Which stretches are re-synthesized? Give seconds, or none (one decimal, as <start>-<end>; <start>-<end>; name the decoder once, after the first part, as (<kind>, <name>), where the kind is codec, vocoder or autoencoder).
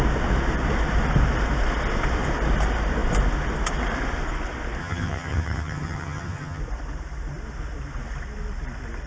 4.8-6.6 (vocoder, HiFi-GAN)